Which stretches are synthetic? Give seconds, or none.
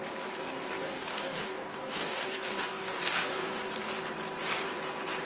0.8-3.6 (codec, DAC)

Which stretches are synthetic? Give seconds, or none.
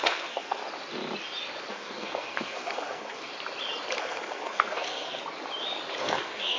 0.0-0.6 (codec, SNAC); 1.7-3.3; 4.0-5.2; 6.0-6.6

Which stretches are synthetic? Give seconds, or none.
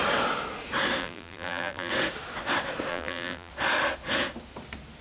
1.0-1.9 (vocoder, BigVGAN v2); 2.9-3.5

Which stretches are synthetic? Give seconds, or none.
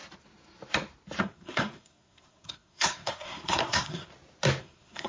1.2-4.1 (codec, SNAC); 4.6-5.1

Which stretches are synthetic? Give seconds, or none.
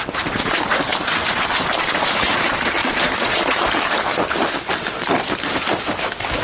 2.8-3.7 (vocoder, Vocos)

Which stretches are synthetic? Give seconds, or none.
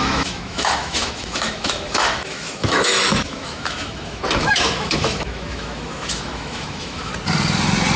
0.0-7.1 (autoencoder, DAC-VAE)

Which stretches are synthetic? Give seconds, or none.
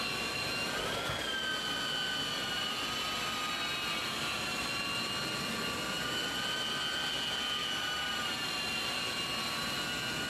none